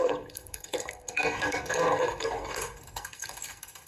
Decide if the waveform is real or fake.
fake